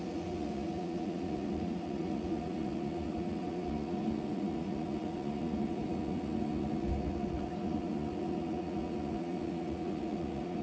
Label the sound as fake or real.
fake